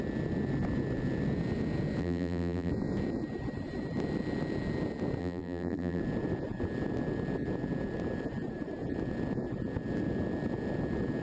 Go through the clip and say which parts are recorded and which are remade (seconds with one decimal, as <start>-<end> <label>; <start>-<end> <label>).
0.0-2.0 recorded; 2.0-2.7 remade; 2.7-5.2 recorded; 5.2-6.0 remade; 6.0-11.2 recorded